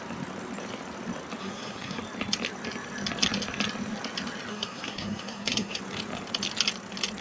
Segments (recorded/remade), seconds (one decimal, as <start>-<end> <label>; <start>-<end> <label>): 0.0-1.4 recorded; 1.4-2.0 remade; 2.0-4.5 recorded; 4.5-5.8 remade; 5.8-7.2 recorded